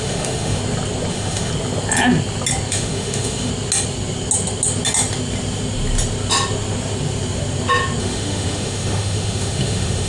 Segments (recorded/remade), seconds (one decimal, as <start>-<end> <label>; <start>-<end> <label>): 0.0-0.6 remade; 0.6-1.1 recorded; 1.1-1.5 remade; 1.5-2.7 recorded; 2.7-3.5 remade; 3.5-8.0 recorded; 8.0-10.1 remade